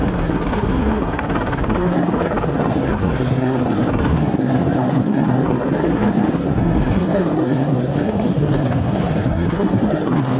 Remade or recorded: remade